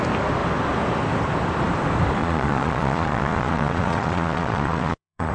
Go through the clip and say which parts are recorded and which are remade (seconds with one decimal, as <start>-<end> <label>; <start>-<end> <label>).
0.0-2.2 recorded; 2.2-5.3 remade